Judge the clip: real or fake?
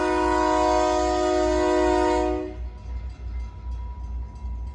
real